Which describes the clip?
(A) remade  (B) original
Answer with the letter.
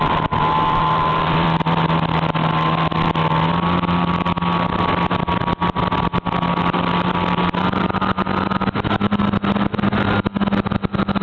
A